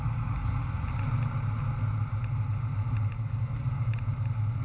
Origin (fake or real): real